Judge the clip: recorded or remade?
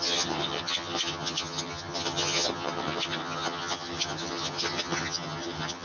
remade